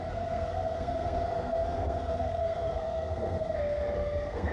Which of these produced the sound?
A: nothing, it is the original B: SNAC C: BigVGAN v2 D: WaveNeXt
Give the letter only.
B